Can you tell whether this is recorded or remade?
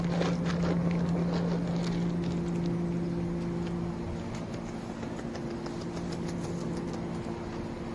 recorded